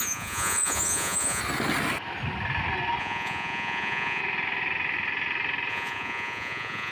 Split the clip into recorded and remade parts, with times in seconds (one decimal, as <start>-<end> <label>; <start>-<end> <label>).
0.0-1.4 remade; 1.4-3.0 recorded; 3.0-4.2 remade; 4.2-5.7 recorded; 5.7-6.9 remade